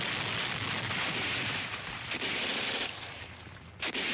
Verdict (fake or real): real